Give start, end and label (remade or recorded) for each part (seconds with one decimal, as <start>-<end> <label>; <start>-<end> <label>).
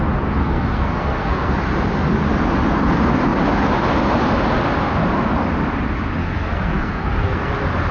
0.0-0.4 recorded; 0.4-1.5 remade; 1.5-6.2 recorded; 6.2-7.5 remade; 7.5-7.9 recorded